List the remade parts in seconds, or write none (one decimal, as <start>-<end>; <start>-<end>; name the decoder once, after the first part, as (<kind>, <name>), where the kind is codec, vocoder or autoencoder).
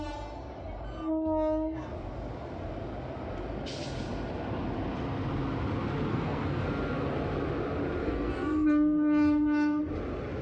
6.1-6.6 (codec, SNAC); 8.0-9.8